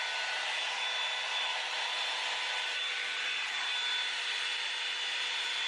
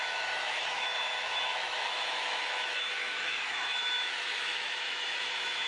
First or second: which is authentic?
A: first